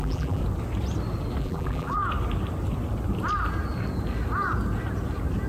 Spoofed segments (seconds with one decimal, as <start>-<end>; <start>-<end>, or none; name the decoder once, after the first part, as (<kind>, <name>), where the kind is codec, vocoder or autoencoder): 0.0-0.4 (vocoder, BigVGAN v2); 1.4-2.0